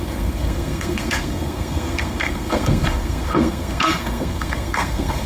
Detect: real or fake fake